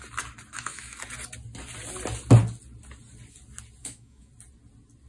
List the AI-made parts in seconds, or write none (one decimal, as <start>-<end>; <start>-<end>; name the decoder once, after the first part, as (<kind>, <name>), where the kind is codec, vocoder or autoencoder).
0.5-1.0 (autoencoder, DAC-VAE); 3.8-4.3